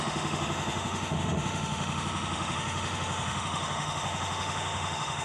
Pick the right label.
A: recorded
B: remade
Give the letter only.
B